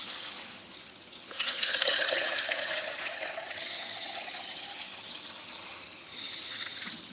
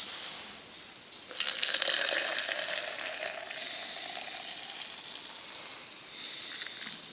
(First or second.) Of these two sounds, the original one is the second